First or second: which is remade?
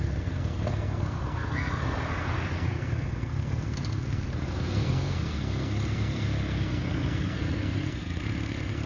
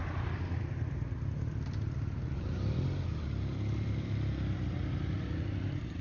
first